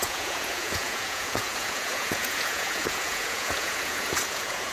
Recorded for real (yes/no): no